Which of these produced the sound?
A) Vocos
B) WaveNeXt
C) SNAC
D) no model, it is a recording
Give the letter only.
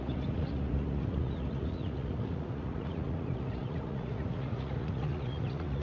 A